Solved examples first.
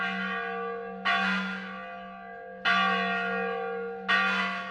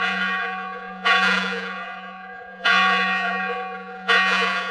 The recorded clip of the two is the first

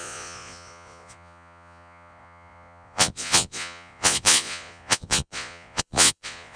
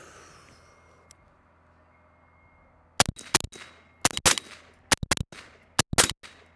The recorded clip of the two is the second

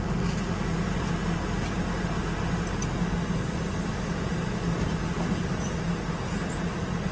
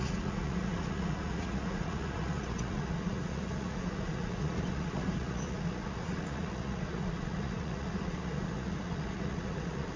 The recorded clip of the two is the first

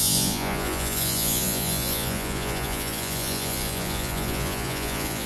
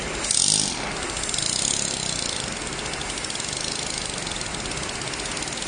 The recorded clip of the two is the second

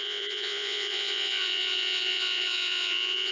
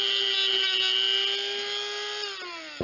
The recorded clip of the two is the second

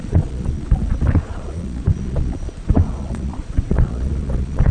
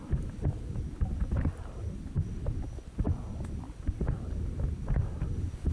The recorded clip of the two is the second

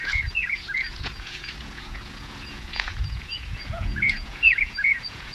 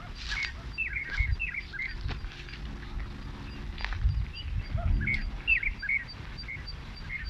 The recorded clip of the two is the second